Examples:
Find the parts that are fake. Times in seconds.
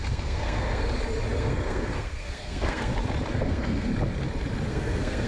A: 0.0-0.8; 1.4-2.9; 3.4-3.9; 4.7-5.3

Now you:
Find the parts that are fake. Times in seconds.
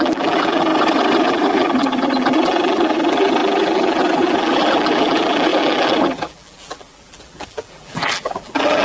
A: 0.0-0.7; 1.2-8.8